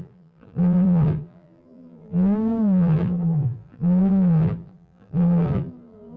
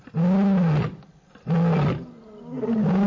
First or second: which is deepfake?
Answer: first